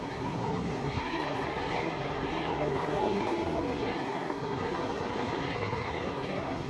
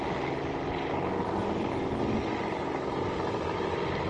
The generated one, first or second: first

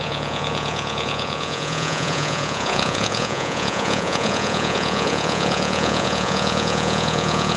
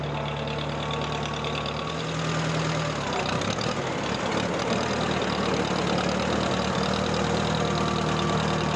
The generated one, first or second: first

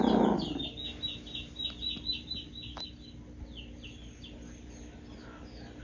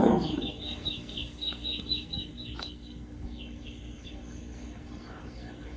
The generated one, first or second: second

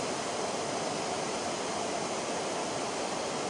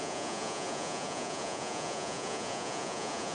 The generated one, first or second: second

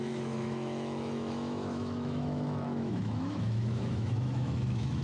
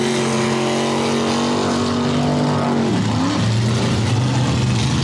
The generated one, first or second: first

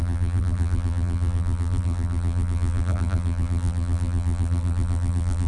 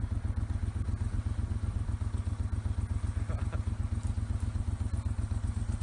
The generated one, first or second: first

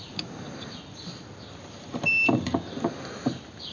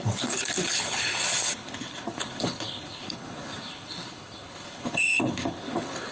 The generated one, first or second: second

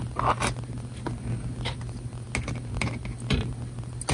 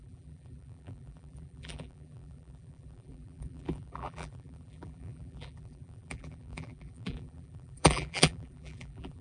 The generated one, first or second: second